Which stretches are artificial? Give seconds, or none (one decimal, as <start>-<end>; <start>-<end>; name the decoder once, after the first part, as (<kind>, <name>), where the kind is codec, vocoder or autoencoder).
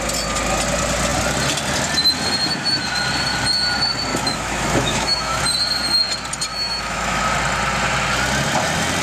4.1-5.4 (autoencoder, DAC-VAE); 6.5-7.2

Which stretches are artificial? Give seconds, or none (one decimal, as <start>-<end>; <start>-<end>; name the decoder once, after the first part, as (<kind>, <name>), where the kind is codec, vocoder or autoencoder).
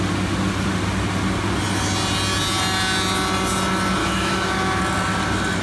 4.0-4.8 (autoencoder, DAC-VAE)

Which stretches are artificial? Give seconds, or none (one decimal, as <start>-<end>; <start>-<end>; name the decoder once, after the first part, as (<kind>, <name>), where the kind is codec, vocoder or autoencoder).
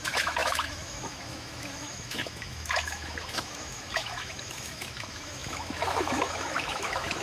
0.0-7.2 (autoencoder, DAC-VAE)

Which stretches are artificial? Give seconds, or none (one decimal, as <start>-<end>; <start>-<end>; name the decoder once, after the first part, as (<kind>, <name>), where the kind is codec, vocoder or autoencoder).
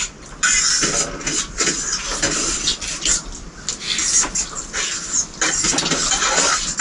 none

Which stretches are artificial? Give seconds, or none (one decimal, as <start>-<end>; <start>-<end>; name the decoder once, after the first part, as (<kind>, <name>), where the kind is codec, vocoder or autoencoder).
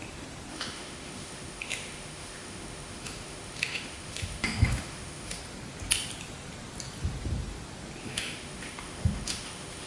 0.5-5.4 (autoencoder, DAC-VAE); 8.0-9.9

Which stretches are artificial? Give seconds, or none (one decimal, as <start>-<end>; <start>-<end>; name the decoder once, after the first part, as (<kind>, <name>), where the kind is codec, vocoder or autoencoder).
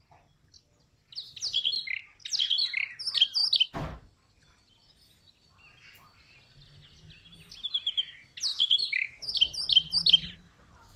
8.5-9.3 (autoencoder, DAC-VAE)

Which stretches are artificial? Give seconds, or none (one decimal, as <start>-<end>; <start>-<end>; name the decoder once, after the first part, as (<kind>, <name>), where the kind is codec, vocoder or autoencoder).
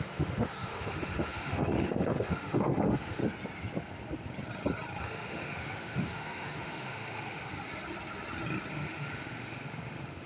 0.0-3.2 (autoencoder, DAC-VAE); 5.0-7.5; 8.7-10.3